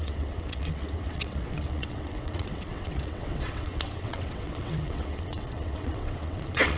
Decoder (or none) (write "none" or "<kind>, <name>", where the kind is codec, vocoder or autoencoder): vocoder, WaveNeXt